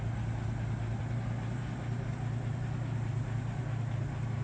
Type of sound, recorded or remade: recorded